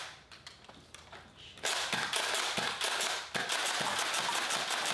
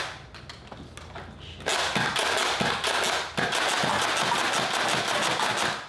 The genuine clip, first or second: second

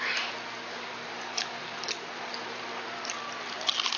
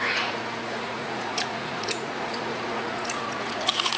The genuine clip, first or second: first